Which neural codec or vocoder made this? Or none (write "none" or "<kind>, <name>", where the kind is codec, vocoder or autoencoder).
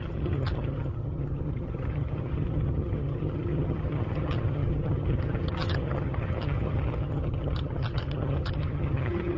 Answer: vocoder, HiFi-GAN